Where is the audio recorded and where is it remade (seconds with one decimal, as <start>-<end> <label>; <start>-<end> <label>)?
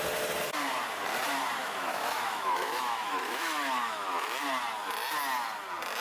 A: 0.0-1.6 recorded; 1.6-4.5 remade; 4.5-6.0 recorded